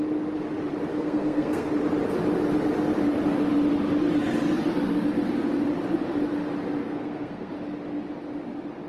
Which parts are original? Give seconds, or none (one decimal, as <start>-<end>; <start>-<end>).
0.0-0.9; 1.7-6.8; 7.5-8.9